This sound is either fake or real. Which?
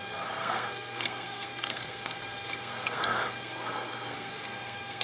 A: fake